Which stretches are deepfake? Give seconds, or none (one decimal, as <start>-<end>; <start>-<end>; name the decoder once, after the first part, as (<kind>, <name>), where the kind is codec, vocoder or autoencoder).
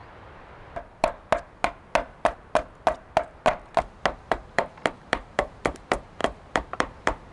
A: 4.3-7.3 (vocoder, BigVGAN v2)